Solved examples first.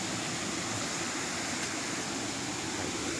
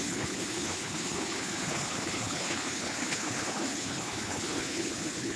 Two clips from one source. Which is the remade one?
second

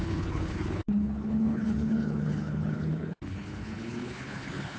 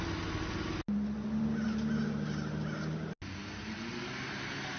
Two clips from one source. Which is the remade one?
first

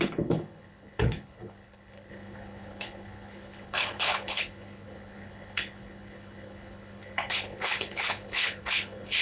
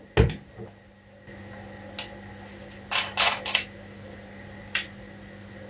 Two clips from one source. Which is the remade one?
first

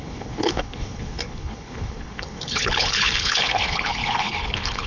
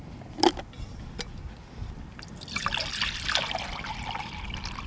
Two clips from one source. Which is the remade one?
first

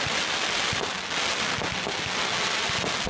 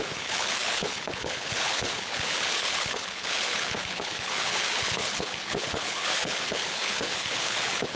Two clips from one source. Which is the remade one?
second